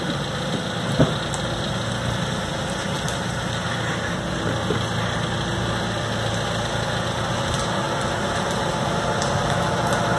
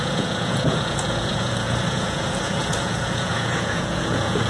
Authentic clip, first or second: first